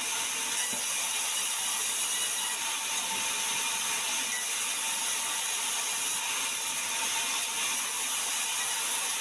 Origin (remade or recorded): recorded